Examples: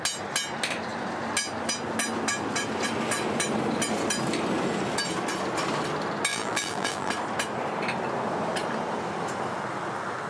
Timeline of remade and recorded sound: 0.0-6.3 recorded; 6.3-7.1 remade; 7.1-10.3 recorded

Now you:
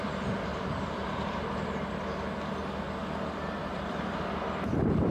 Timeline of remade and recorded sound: 0.0-0.5 recorded; 0.5-1.9 remade; 1.9-3.6 recorded; 3.6-4.2 remade; 4.2-5.1 recorded

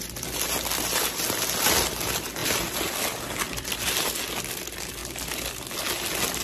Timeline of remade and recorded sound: 0.0-6.4 recorded

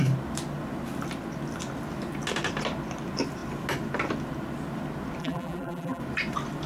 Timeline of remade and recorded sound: 0.0-5.2 recorded; 5.2-6.0 remade; 6.0-6.7 recorded

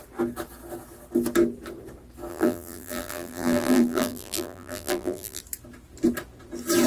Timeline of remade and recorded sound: 0.0-2.3 recorded; 2.3-5.4 remade; 5.4-6.9 recorded

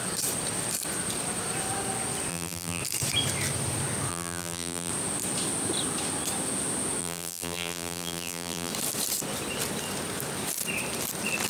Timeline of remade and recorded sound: 0.0-2.3 recorded; 2.3-2.8 remade; 2.8-4.1 recorded; 4.1-4.9 remade; 4.9-7.0 recorded; 7.0-8.7 remade; 8.7-11.5 recorded